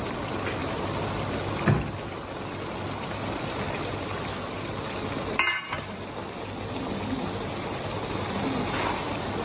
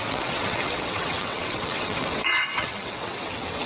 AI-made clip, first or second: second